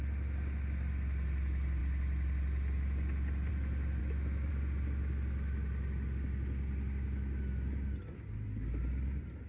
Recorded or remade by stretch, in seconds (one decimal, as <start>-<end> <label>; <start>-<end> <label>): 0.0-4.0 recorded; 4.0-4.5 remade; 4.5-9.5 recorded